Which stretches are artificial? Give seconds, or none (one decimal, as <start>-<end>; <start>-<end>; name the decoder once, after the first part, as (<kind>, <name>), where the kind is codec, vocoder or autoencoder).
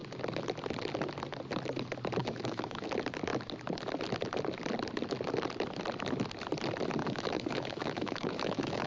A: 2.2-2.9 (autoencoder, DAC-VAE); 7.0-8.9